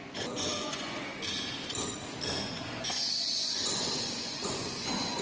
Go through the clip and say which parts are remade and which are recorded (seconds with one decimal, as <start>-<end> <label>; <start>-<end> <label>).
0.0-1.0 remade; 1.0-2.4 recorded; 2.4-5.2 remade